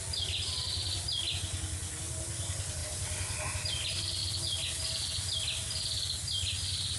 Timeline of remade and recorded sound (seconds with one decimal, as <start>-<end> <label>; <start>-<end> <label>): 0.0-7.0 recorded